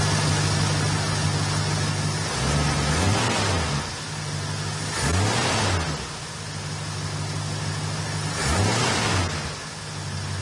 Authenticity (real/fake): real